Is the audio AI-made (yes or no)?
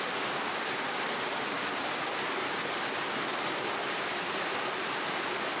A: no